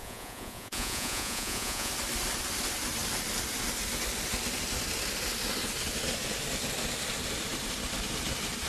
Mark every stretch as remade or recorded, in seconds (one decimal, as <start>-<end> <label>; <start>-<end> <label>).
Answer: 0.0-1.9 remade; 1.9-8.7 recorded